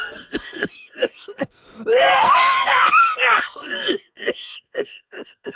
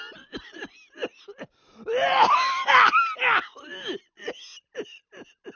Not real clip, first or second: first